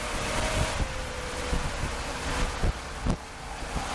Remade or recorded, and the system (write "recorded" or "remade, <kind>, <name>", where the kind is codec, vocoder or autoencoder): recorded